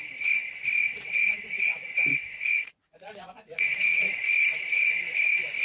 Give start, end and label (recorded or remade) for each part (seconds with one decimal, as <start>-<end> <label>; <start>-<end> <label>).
0.0-0.8 recorded; 0.8-4.2 remade; 4.2-5.6 recorded